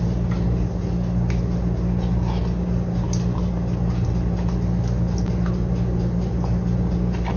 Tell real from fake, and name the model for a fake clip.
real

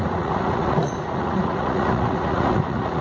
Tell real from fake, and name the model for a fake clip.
fake, vocoder, Vocos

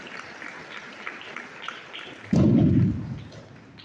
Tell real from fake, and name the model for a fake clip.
real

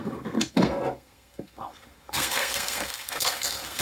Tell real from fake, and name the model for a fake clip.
fake, codec, SNAC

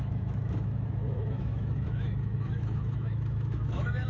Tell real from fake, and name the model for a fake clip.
fake, autoencoder, DAC-VAE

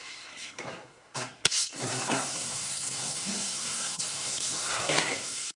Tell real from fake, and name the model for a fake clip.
fake, codec, SNAC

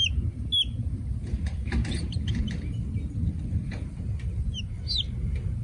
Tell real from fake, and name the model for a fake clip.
real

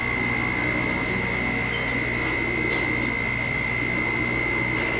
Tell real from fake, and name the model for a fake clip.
real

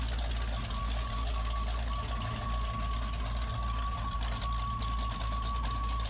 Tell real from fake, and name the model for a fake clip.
real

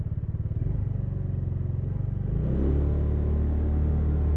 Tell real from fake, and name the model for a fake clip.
real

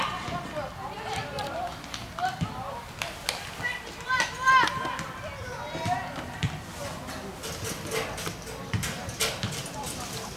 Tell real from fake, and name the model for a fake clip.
real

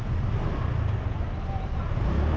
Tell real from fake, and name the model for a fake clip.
real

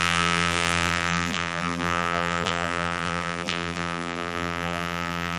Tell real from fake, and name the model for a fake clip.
fake, vocoder, BigVGAN v2